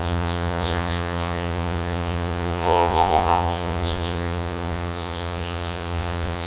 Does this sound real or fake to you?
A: fake